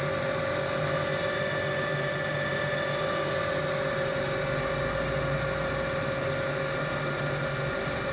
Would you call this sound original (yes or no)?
yes